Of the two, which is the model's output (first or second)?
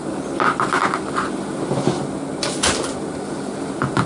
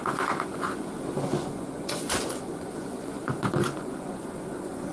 second